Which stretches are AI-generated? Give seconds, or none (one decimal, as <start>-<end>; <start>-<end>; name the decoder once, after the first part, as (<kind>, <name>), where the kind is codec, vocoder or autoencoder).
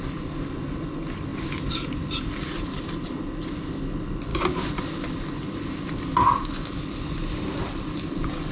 1.3-3.2 (vocoder, BigVGAN v2)